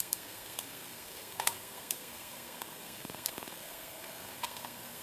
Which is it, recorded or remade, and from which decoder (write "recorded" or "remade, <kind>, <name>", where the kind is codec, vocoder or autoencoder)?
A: remade, codec, SNAC